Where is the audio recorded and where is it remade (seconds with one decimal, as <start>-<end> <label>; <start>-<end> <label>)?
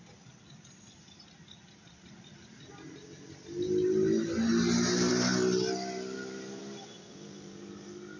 0.0-8.2 recorded